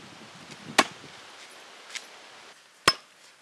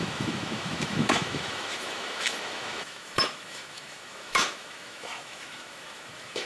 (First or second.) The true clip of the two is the first